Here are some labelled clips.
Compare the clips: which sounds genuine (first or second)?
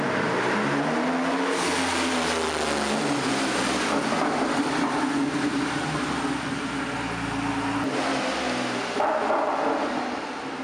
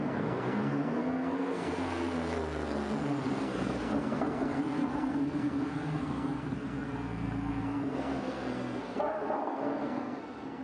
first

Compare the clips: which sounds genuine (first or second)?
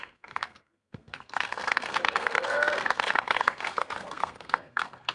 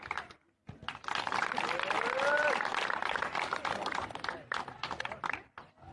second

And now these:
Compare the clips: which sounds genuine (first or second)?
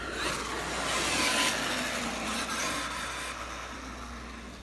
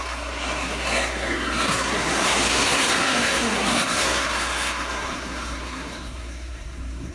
first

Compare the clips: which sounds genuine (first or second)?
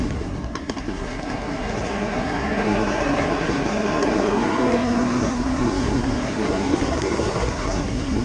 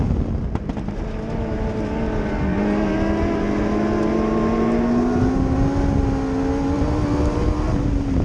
second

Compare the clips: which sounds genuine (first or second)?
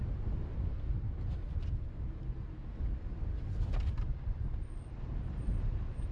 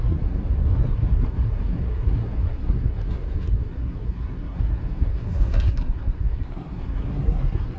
first